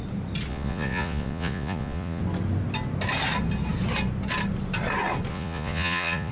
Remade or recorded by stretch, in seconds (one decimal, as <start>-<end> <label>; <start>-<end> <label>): 0.0-0.5 recorded; 0.5-2.2 remade; 2.2-5.3 recorded; 5.3-6.3 remade